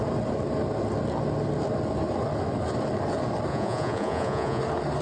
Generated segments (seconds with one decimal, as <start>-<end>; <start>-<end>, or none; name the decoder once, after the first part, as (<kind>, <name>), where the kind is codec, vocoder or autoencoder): 3.5-4.6 (vocoder, Vocos)